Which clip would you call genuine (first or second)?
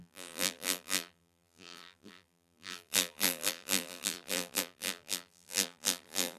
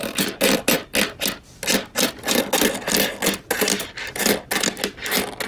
second